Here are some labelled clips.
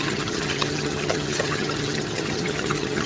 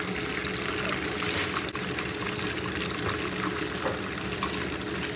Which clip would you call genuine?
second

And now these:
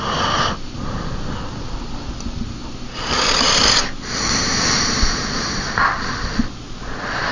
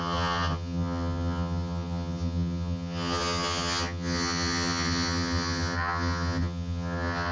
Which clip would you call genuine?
first